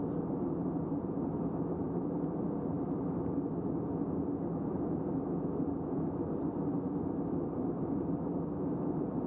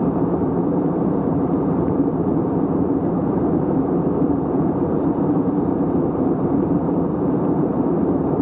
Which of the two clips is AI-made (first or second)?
second